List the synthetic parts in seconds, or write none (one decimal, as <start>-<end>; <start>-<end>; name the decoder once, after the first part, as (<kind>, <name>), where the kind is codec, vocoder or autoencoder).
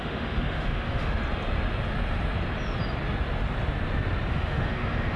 0.0-1.2 (autoencoder, DAC-VAE); 4.3-5.2